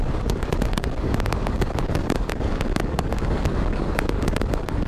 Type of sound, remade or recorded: remade